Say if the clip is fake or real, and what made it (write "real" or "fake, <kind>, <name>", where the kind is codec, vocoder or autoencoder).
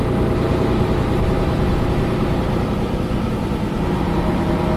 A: fake, vocoder, BigVGAN v2